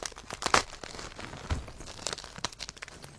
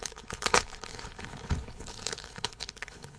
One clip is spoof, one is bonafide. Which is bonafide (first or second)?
first